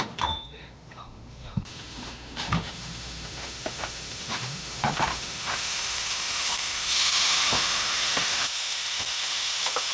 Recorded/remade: remade